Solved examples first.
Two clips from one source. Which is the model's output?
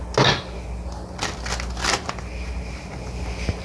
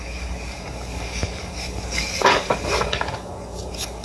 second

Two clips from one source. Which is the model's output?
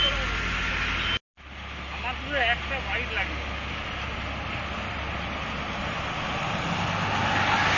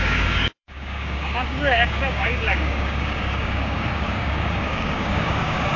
second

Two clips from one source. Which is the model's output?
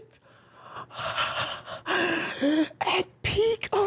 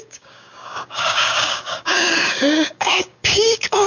second